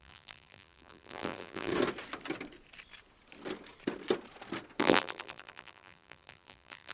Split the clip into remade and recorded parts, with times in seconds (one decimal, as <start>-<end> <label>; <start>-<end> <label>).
0.0-1.7 remade; 1.7-4.8 recorded; 4.8-6.9 remade